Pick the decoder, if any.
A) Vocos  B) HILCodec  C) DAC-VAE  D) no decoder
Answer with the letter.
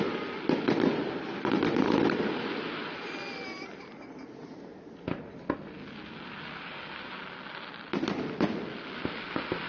D